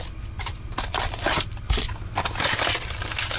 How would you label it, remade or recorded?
recorded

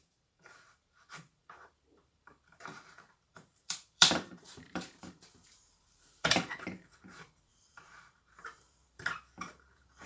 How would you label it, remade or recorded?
remade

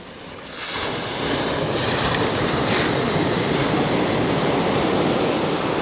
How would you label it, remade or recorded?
remade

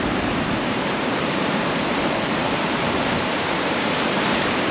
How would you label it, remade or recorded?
remade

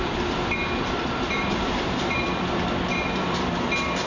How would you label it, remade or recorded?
remade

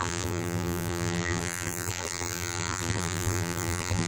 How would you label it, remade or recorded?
remade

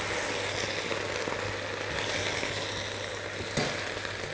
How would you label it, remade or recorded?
recorded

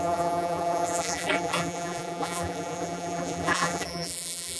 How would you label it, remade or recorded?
remade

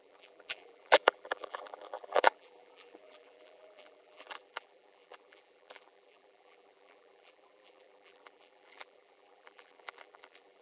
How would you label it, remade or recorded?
remade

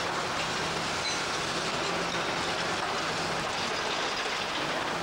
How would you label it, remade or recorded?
recorded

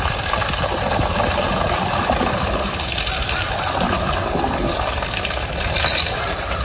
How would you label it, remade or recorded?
recorded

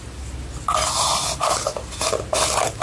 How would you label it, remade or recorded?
recorded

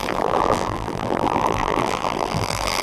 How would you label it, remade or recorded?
remade